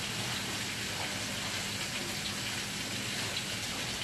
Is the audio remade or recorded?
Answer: recorded